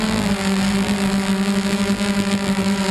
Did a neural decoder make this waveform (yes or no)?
yes